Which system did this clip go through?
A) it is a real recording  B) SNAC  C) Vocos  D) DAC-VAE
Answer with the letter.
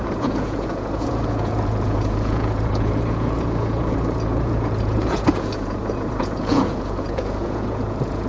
C